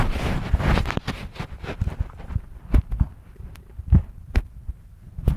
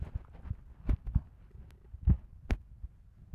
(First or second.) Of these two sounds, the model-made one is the first